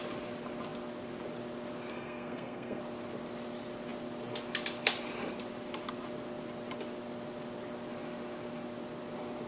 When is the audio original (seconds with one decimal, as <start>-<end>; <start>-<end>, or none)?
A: 0.0-1.9; 2.8-9.5